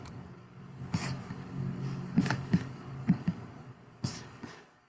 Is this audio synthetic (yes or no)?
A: yes